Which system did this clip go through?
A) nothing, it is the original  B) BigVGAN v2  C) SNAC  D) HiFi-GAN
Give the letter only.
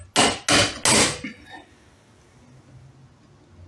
A